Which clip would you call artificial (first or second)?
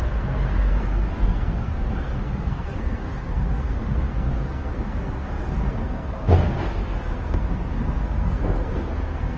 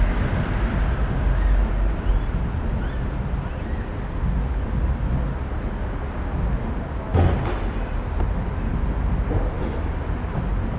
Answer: first